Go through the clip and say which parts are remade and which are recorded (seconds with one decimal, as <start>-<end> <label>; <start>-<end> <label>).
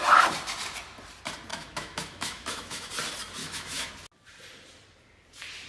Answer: 0.0-1.5 recorded; 1.5-2.9 remade; 2.9-3.4 recorded; 3.4-3.9 remade; 3.9-5.7 recorded